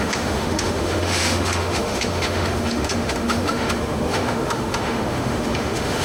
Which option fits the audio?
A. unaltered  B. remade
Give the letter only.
B